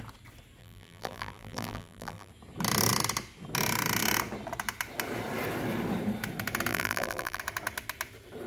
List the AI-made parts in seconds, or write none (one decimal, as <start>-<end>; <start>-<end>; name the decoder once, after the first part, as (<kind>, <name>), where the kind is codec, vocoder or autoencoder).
0.6-2.3 (vocoder, BigVGAN v2); 6.7-7.4